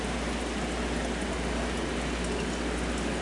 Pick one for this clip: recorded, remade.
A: recorded